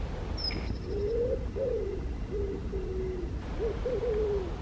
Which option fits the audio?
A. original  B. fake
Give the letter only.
A